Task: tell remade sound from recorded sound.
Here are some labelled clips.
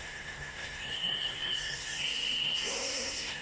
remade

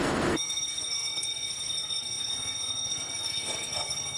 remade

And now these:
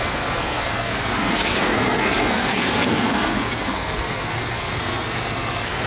remade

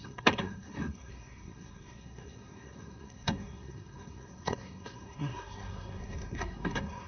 remade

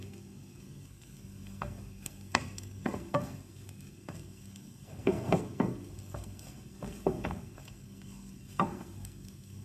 remade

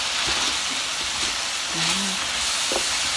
recorded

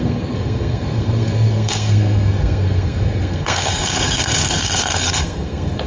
remade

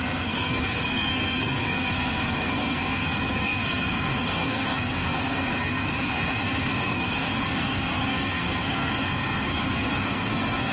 remade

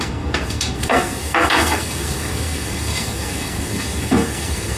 remade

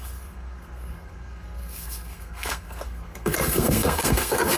remade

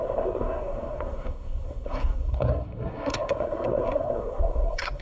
remade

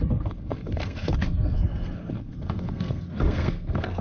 remade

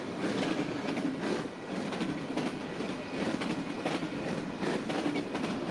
recorded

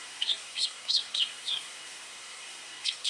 remade